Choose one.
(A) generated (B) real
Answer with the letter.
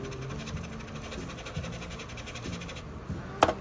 B